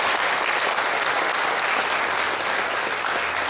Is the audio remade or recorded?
recorded